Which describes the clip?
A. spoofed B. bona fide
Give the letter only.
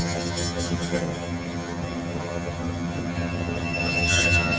A